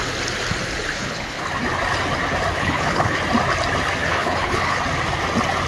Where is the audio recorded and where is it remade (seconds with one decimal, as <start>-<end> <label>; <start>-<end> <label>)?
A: 0.0-0.9 recorded; 0.9-1.4 remade; 1.4-2.5 recorded; 2.5-3.2 remade; 3.2-4.0 recorded; 4.0-4.8 remade; 4.8-5.7 recorded

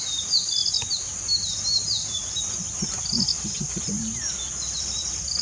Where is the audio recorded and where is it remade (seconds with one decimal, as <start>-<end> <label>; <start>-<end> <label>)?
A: 0.0-5.4 recorded

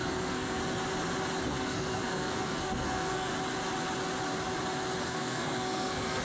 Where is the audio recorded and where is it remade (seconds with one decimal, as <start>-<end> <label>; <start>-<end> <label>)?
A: 0.0-0.6 remade; 0.6-1.4 recorded; 1.4-3.3 remade; 3.3-5.0 recorded; 5.0-6.2 remade

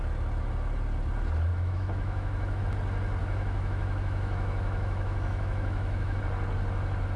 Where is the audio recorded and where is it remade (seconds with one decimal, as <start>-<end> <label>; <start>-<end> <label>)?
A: 0.0-1.5 recorded; 1.5-2.6 remade; 2.6-3.2 recorded; 3.2-6.2 remade; 6.2-7.2 recorded

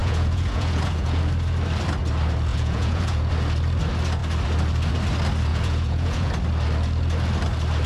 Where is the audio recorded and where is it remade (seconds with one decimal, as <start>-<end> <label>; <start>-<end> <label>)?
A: 0.0-1.2 remade; 1.2-2.5 recorded; 2.5-3.3 remade; 3.3-5.5 recorded; 5.5-6.3 remade; 6.3-7.9 recorded